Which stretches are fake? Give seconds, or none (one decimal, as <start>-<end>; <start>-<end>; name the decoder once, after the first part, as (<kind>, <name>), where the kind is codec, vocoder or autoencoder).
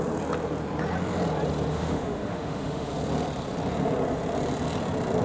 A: 1.7-2.9 (autoencoder, DAC-VAE)